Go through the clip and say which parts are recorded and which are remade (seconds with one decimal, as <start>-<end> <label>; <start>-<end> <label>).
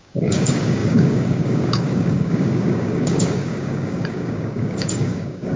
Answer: 0.0-5.6 remade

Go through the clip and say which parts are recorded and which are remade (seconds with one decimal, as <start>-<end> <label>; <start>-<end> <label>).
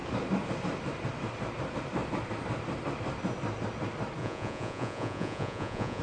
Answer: 0.0-4.2 recorded; 4.2-6.0 remade